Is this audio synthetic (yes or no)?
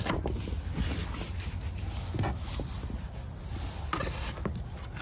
no